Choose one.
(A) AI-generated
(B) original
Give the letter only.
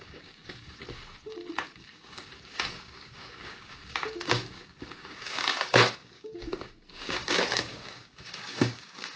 A